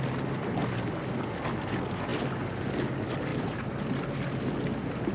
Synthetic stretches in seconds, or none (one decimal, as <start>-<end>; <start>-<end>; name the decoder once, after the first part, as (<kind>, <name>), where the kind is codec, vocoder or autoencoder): 3.3-4.3 (vocoder, BigVGAN v2)